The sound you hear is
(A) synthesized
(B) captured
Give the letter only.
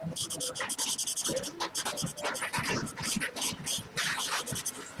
B